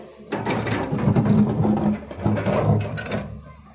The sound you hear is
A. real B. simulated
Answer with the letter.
A